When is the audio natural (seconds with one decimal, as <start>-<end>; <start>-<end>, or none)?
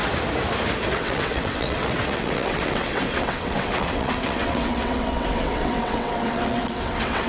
0.0-0.9